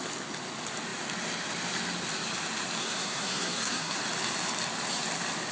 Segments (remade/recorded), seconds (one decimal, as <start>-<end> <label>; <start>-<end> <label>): 0.0-2.8 recorded; 2.8-4.0 remade; 4.0-5.5 recorded